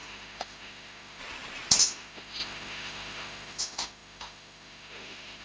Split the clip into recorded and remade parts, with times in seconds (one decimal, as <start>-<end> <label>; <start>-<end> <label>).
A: 0.0-1.2 remade; 1.2-1.8 recorded; 1.8-5.4 remade